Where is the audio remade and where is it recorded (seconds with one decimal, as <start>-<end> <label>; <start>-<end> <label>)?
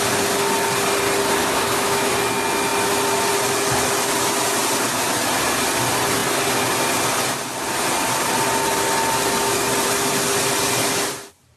0.0-1.4 recorded; 1.4-2.1 remade; 2.1-11.6 recorded